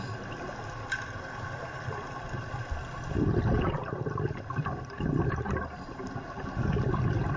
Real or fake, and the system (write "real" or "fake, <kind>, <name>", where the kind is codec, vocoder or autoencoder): real